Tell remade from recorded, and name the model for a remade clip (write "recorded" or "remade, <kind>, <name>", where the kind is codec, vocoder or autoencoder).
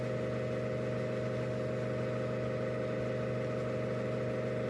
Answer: recorded